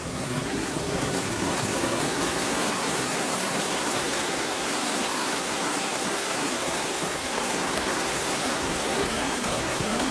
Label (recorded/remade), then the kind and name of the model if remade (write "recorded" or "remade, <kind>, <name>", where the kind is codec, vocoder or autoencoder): remade, codec, SNAC